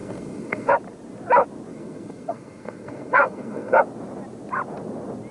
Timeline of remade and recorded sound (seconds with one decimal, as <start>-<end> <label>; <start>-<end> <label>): 0.0-0.7 remade; 0.7-1.7 recorded; 1.7-3.8 remade; 3.8-5.3 recorded

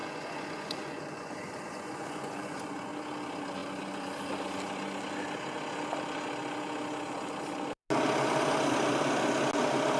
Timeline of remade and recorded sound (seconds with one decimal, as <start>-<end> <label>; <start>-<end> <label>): 0.0-2.9 remade; 2.9-10.0 recorded